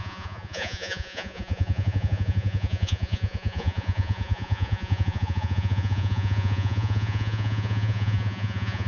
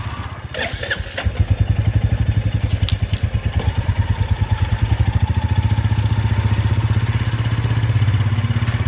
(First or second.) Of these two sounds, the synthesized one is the first